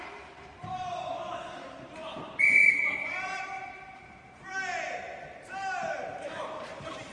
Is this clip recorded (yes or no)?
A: no